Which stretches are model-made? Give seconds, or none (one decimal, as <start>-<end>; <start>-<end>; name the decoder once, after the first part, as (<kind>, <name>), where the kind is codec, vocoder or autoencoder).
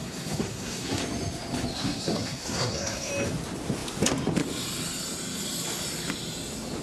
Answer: 0.0-1.0 (codec, SNAC); 1.7-3.1